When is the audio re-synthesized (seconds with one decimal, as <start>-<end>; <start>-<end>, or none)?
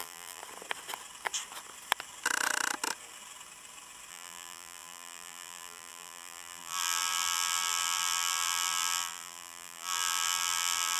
0.0-0.4; 4.1-11.0